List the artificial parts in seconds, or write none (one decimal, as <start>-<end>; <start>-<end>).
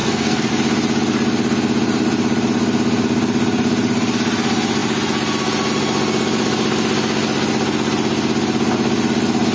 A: 0.0-0.5